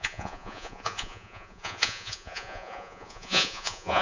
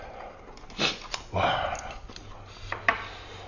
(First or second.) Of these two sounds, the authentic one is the second